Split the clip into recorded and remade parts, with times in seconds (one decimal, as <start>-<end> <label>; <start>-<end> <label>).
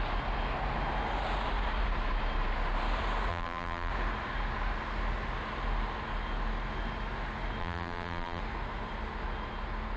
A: 0.0-3.3 recorded; 3.3-3.9 remade; 3.9-7.6 recorded; 7.6-8.4 remade; 8.4-10.0 recorded